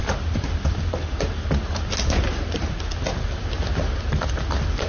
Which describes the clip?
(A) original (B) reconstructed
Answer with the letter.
A